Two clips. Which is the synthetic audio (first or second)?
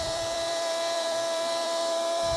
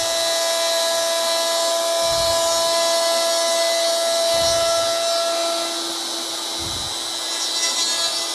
first